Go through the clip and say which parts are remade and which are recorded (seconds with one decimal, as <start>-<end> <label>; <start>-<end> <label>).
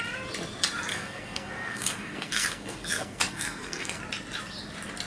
0.0-0.9 recorded; 0.9-4.0 remade; 4.0-5.1 recorded